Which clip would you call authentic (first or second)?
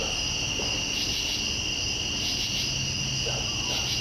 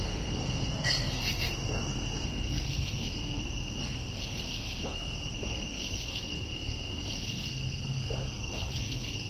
first